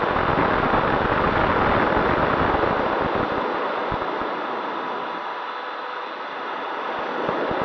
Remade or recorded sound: recorded